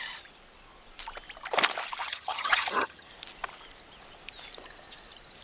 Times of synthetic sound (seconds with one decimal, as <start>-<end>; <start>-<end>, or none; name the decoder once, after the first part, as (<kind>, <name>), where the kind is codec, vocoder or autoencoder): 2.0-3.1 (vocoder, HiFi-GAN)